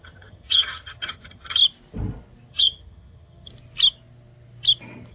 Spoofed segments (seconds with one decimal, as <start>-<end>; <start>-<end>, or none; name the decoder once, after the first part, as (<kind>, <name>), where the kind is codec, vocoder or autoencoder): 0.0-1.6 (vocoder, HiFi-GAN); 2.5-3.5